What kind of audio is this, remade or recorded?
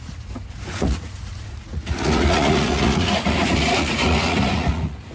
remade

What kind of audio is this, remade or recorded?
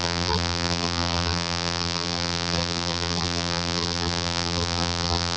remade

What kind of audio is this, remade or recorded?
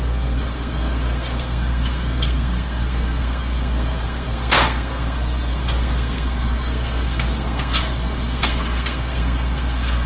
remade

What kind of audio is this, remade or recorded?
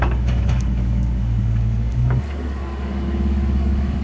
remade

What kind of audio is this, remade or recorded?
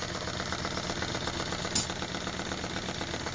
recorded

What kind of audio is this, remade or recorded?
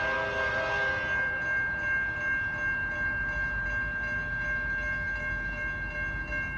recorded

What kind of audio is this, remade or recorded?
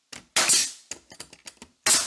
recorded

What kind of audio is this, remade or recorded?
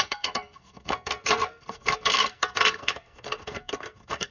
remade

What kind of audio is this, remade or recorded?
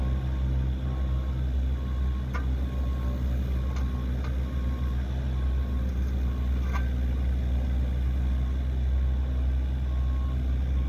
recorded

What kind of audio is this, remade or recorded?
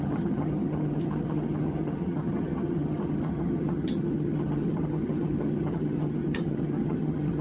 remade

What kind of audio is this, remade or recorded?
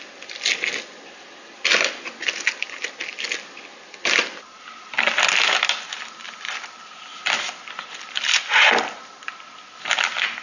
recorded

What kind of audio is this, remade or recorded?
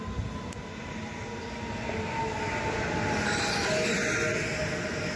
recorded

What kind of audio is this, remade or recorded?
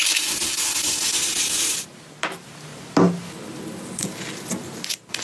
recorded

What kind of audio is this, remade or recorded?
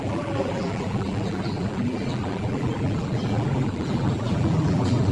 remade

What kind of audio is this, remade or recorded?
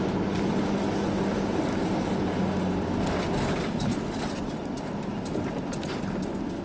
recorded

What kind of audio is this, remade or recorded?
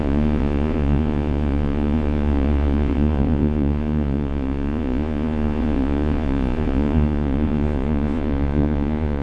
remade